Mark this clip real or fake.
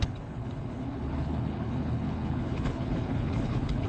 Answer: fake